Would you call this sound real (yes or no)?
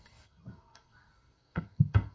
no